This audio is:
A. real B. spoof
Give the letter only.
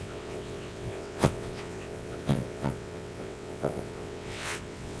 B